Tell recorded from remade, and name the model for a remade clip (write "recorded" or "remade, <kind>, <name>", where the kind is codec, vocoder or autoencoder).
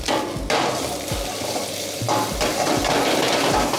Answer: remade, vocoder, BigVGAN v2